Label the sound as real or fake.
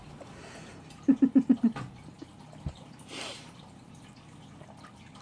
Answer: real